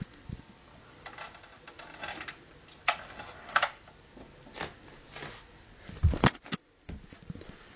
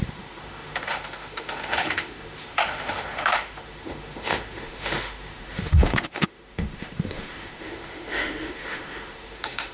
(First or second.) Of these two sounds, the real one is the first